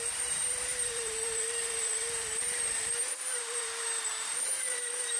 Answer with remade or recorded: remade